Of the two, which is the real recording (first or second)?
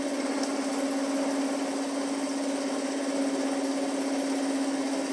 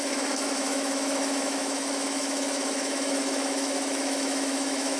first